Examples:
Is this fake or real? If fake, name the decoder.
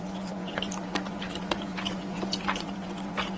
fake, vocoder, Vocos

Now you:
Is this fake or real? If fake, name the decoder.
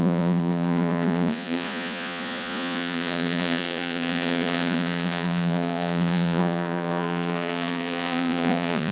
fake, vocoder, Vocos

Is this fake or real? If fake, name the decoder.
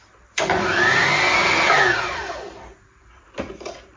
real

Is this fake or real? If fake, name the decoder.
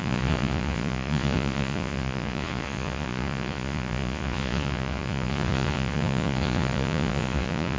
fake, vocoder, Vocos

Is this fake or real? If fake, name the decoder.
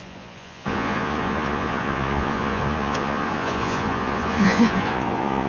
fake, vocoder, Vocos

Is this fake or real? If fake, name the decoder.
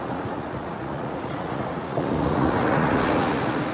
fake, vocoder, Vocos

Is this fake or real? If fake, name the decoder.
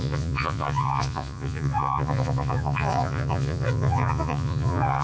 fake, vocoder, Vocos